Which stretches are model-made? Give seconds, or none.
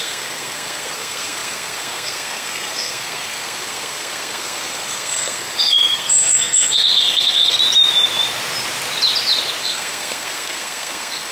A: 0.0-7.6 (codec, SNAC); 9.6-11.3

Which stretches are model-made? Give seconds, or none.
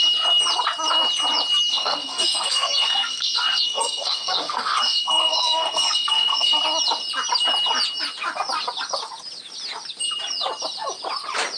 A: 1.7-6.6 (codec, SNAC)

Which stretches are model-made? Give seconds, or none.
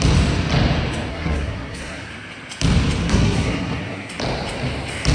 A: 1.1-2.1 (codec, SNAC); 3.0-4.1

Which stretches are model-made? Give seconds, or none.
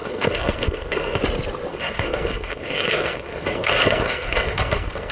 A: 0.0-1.2 (codec, SNAC); 1.7-5.1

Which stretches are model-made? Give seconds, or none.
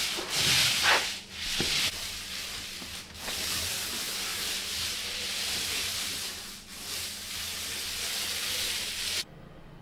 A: none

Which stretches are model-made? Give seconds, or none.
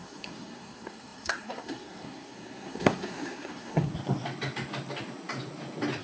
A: 0.0-3.9 (codec, SNAC)